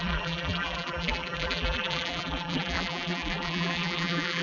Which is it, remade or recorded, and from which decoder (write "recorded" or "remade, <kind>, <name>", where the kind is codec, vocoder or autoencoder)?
remade, vocoder, BigVGAN v2